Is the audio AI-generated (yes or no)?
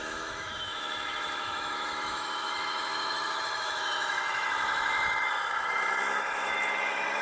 yes